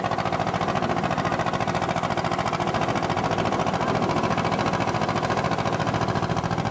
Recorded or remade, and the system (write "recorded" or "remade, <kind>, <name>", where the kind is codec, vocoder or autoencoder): recorded